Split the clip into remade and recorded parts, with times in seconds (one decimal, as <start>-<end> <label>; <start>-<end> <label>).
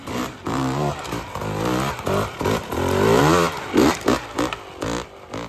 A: 0.0-5.5 recorded